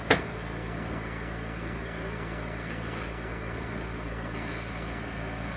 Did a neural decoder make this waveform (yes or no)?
yes